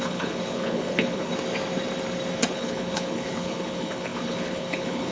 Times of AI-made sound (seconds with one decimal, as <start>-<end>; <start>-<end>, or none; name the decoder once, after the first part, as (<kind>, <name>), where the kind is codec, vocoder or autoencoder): 0.0-1.3 (codec, HILCodec); 2.5-5.1